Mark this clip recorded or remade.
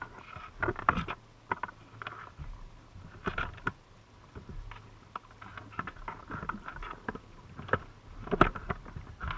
recorded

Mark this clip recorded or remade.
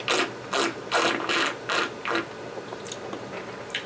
recorded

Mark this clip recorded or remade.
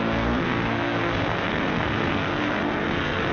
remade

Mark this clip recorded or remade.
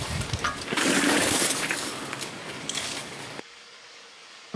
remade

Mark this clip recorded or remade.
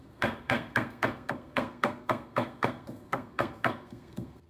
remade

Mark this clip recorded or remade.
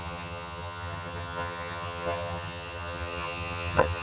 remade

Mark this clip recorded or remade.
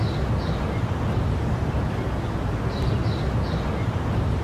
recorded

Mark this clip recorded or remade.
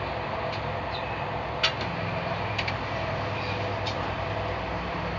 recorded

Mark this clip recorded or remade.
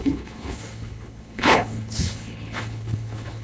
remade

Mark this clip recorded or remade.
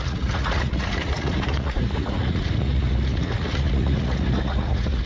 remade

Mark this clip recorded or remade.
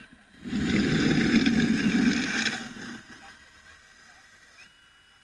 recorded